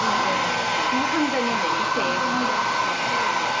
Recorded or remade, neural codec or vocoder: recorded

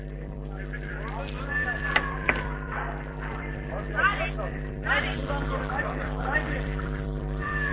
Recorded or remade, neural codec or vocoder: remade, vocoder, BigVGAN v2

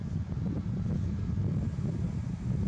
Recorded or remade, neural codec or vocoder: recorded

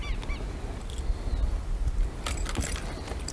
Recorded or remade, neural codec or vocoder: recorded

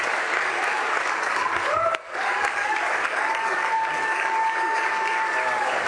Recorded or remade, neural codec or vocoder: remade, codec, DAC